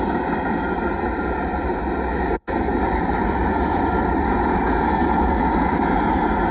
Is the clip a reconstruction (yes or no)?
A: no